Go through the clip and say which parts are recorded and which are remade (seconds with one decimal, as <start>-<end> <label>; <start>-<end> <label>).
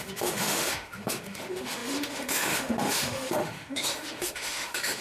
0.0-5.0 remade